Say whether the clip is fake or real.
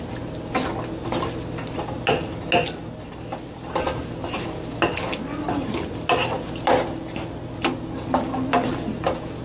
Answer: real